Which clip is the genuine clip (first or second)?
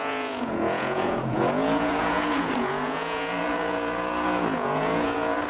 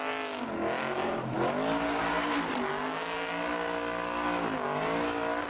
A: second